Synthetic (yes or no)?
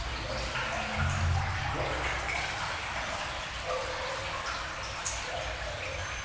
no